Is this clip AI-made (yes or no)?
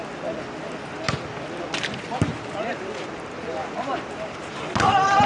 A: no